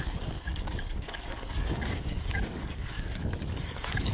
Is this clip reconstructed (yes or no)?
yes